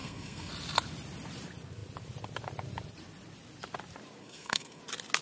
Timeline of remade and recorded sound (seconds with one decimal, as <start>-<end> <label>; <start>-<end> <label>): 0.0-0.5 remade; 0.5-4.2 recorded; 4.2-4.8 remade; 4.8-5.2 recorded